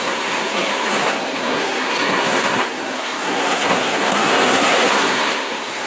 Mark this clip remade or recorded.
remade